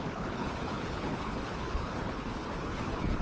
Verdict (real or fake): fake